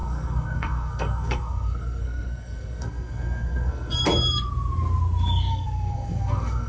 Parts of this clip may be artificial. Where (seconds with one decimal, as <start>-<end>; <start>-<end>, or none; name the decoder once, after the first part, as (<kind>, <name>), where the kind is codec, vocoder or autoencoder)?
0.0-4.0 (codec, SNAC); 5.5-6.7

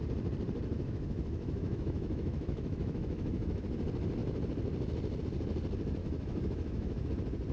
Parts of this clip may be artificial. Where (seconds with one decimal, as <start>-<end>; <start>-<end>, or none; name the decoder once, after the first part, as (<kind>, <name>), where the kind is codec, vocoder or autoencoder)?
0.7-3.6 (autoencoder, DAC-VAE); 6.0-7.1

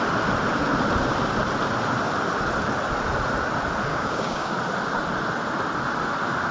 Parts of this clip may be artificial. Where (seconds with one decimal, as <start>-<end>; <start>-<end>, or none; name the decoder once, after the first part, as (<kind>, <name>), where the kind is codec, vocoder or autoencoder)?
3.9-4.5 (codec, DAC)

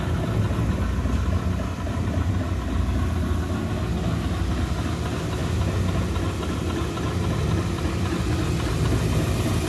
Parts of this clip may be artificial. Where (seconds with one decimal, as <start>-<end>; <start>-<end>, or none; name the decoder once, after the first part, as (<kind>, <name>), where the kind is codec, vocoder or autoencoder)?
none

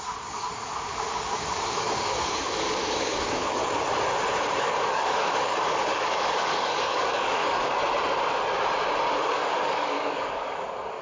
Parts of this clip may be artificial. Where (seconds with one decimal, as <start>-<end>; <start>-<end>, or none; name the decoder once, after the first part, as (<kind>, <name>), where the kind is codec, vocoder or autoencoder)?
0.0-3.6 (codec, DAC); 4.6-7.8; 9.2-11.0

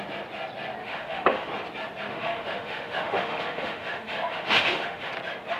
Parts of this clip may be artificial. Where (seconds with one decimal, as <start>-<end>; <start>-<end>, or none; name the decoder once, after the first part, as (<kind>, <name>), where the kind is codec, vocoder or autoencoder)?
0.8-1.5 (autoencoder, DAC-VAE); 2.1-5.1

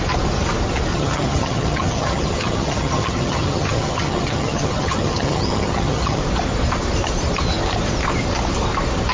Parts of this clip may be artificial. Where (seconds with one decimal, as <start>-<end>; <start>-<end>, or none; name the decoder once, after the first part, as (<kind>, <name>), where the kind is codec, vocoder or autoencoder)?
0.9-6.2 (vocoder, HiFi-GAN)

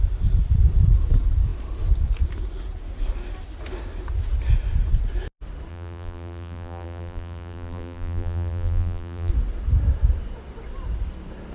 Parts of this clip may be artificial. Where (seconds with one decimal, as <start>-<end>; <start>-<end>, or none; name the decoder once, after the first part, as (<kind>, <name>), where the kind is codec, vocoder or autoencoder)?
5.7-9.3 (vocoder, BigVGAN v2)